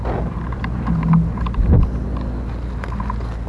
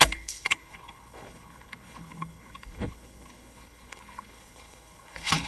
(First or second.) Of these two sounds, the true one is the first